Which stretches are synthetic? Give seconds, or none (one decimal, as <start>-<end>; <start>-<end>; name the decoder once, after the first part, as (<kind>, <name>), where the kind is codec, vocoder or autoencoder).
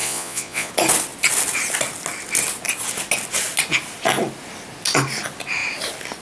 0.0-0.7 (vocoder, Vocos)